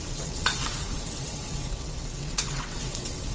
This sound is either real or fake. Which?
fake